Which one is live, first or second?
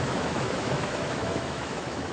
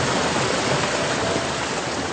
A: second